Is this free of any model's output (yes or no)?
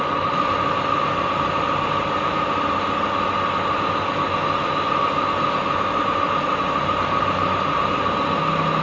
yes